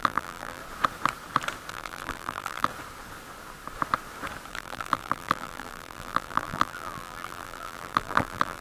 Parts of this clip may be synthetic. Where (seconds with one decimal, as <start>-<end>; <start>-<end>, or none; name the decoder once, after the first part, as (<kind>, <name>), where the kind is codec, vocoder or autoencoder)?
0.0-0.6 (vocoder, BigVGAN v2); 1.7-2.7; 4.5-8.6